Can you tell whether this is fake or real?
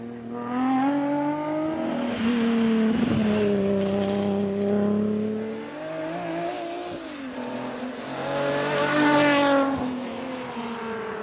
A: real